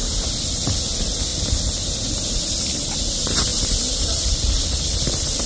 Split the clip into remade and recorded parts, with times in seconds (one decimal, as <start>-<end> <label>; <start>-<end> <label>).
0.0-5.5 recorded